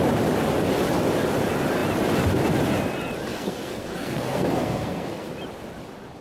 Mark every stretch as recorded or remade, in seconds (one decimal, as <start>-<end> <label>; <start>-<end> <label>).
0.0-3.3 recorded; 3.3-5.3 remade; 5.3-6.2 recorded